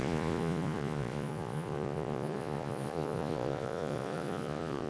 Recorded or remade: remade